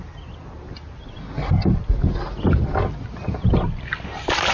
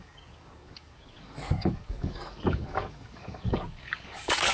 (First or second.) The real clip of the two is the first